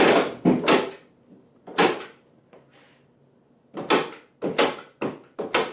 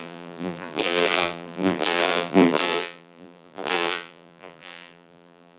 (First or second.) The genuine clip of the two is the first